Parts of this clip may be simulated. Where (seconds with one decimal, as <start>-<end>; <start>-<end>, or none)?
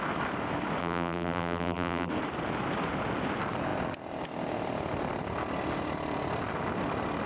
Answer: 0.8-2.1